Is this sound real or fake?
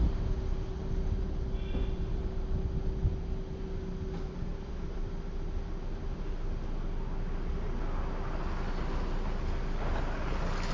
real